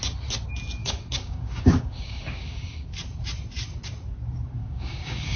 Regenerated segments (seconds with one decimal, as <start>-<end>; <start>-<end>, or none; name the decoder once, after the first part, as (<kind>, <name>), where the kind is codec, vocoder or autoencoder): 0.8-2.9 (codec, DAC); 4.6-5.4